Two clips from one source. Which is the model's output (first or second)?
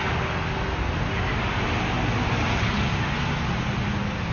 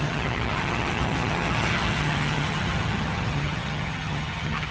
second